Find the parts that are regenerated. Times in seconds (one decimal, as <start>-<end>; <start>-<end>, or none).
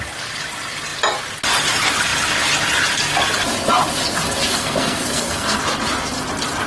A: 4.5-5.6